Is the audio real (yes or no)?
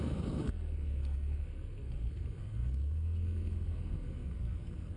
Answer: no